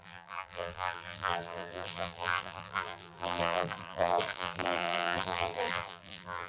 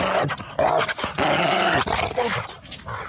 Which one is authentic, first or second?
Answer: second